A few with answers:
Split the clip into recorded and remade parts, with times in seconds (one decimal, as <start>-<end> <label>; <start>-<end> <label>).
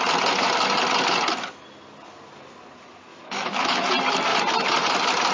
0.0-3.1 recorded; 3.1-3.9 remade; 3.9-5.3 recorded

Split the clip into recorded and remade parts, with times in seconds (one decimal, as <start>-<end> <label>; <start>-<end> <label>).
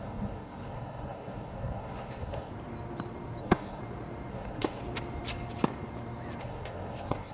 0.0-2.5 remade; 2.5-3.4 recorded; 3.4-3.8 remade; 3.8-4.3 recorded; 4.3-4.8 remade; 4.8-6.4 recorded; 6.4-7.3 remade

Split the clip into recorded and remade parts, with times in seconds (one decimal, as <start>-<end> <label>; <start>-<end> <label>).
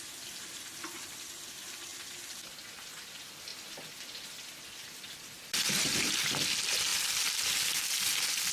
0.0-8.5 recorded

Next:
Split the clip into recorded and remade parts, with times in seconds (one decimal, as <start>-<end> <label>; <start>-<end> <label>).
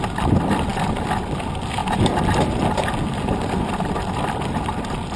0.0-0.7 remade; 0.7-1.4 recorded; 1.4-1.8 remade; 1.8-5.2 recorded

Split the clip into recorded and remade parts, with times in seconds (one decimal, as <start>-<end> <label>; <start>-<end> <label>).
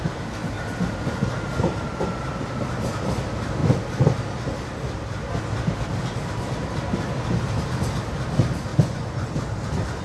0.0-8.7 recorded; 8.7-9.3 remade; 9.3-10.0 recorded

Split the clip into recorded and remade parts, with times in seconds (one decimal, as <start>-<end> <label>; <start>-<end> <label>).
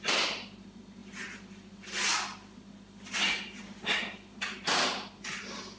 0.0-5.8 recorded